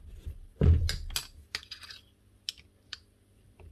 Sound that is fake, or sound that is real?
real